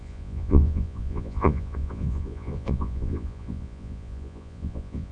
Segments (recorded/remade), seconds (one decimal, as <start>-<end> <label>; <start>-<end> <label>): 0.0-5.1 remade